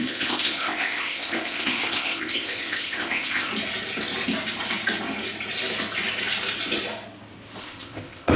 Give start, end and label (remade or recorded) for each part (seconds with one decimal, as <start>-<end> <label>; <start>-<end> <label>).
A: 0.0-3.5 remade; 3.5-7.6 recorded; 7.6-8.4 remade